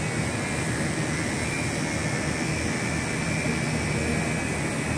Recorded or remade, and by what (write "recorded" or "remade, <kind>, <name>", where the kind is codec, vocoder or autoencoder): recorded